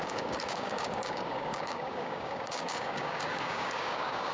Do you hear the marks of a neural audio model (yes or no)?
yes